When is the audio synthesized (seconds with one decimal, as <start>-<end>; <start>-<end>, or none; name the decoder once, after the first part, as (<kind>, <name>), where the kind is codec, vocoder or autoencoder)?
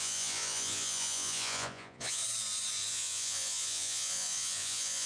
0.0-2.2 (vocoder, Vocos); 2.9-5.1